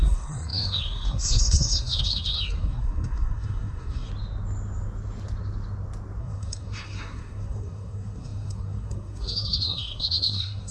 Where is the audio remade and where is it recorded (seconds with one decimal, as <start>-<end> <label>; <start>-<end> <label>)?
0.0-4.1 remade; 4.1-6.2 recorded; 6.2-10.7 remade